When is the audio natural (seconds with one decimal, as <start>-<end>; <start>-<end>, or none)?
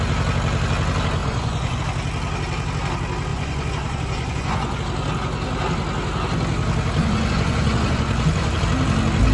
0.0-1.2; 1.8-3.3; 4.8-7.0; 8.6-9.3